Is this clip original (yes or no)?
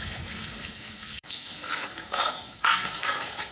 no